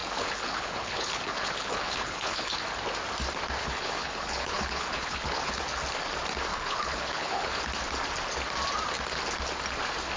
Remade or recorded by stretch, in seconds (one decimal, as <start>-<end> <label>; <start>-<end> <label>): 0.0-2.6 remade; 2.6-3.6 recorded; 3.6-5.6 remade; 5.6-6.5 recorded; 6.5-7.6 remade; 7.6-10.2 recorded

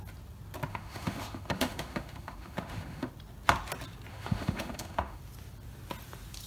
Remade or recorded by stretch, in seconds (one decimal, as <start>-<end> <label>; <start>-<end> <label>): 0.0-0.7 recorded; 0.7-3.1 remade; 3.1-4.1 recorded; 4.1-5.2 remade; 5.2-6.5 recorded

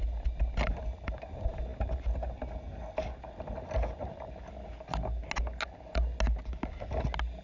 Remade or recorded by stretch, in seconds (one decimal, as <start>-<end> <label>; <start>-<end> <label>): 0.0-7.4 recorded

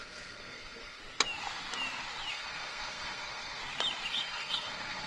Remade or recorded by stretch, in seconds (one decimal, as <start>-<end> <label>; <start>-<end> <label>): 0.0-1.0 remade; 1.0-2.3 recorded; 2.3-3.6 remade; 3.6-4.1 recorded; 4.1-5.1 remade

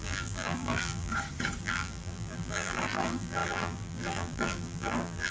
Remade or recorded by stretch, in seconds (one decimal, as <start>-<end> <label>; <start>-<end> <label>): 0.0-1.1 remade; 1.1-1.6 recorded; 1.6-5.3 remade

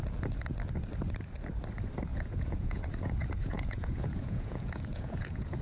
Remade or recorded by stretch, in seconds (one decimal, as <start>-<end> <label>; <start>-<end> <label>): 0.0-2.1 recorded; 2.1-5.6 remade

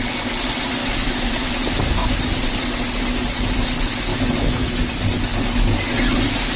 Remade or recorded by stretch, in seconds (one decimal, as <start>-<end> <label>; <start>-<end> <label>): 0.0-0.8 recorded; 0.8-1.5 remade; 1.5-4.1 recorded; 4.1-4.7 remade; 4.7-6.6 recorded